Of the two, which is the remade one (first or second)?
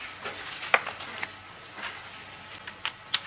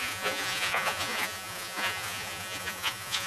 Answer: second